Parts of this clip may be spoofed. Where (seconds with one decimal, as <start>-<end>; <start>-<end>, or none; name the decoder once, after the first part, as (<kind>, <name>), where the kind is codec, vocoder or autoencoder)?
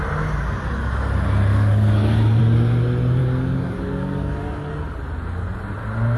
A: 1.5-2.4 (codec, DAC); 3.2-4.7